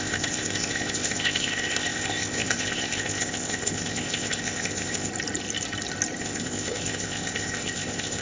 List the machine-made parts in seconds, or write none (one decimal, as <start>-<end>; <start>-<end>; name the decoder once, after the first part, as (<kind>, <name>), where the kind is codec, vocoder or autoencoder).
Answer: 0.0-5.1 (codec, ZipCodec); 6.2-8.2